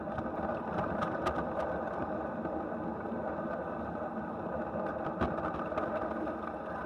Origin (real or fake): real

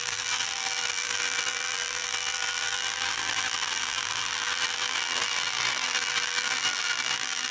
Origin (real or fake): fake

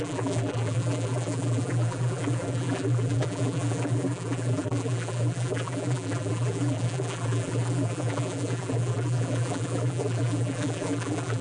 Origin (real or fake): fake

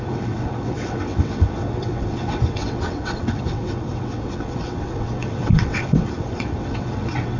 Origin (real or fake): fake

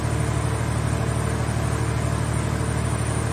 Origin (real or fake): real